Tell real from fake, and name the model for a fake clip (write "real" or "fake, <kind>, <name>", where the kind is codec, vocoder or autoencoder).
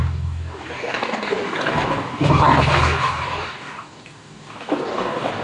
fake, codec, DAC